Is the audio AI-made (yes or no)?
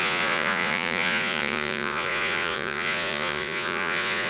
yes